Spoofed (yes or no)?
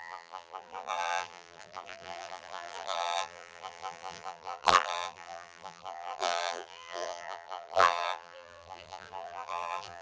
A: yes